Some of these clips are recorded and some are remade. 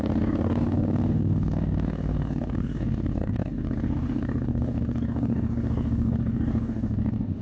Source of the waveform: remade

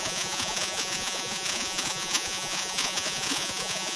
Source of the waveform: remade